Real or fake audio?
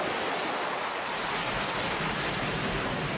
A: real